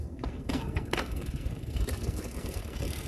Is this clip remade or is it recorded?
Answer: remade